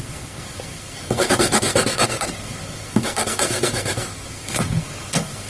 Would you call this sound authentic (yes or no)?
no